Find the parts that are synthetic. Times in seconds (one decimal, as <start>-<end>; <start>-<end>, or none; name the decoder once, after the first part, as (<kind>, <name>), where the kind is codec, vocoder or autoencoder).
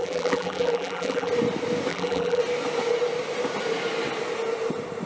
0.0-1.3 (vocoder, BigVGAN v2); 1.9-2.4